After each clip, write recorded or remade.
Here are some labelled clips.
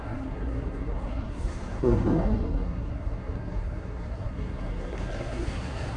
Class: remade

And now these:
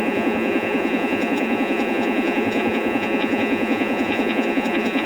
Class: remade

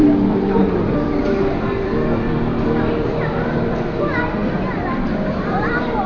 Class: remade